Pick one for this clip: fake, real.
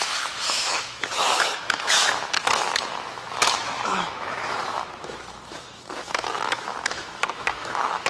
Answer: fake